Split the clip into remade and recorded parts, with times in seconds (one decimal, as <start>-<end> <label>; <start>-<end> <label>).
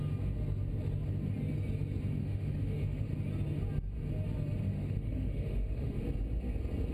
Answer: 0.0-2.2 recorded; 2.2-3.1 remade; 3.1-4.7 recorded; 4.7-6.0 remade; 6.0-6.9 recorded